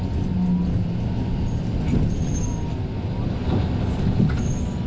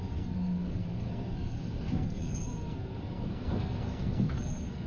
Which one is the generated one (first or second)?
second